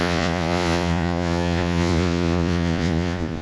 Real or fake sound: fake